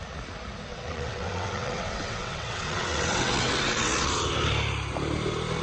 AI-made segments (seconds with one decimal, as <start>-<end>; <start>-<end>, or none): 0.7-4.1